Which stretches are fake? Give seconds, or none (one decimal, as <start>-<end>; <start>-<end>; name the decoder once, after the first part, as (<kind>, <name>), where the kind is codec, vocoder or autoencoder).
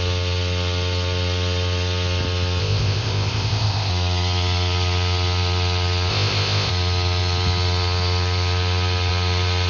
2.6-3.9 (codec, ZipCodec); 6.1-6.7